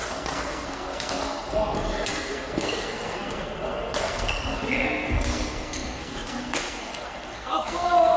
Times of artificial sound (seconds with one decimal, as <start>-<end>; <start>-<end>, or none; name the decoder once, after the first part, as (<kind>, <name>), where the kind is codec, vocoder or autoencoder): 0.0-8.2 (codec, SNAC)